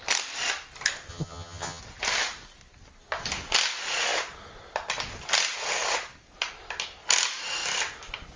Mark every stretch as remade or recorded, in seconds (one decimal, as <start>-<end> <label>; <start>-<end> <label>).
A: 0.0-1.1 recorded; 1.1-1.8 remade; 1.8-8.4 recorded